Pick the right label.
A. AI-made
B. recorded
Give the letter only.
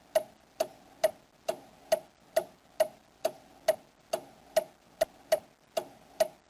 B